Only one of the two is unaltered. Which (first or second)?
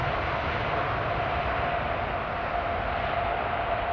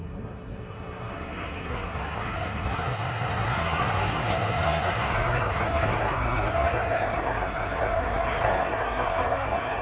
first